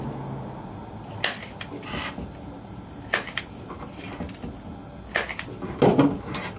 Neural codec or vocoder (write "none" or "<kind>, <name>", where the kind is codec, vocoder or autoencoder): none